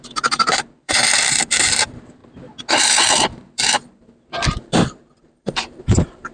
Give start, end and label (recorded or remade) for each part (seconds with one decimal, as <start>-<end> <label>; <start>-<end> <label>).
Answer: 0.0-2.2 remade; 2.2-3.1 recorded; 3.1-6.3 remade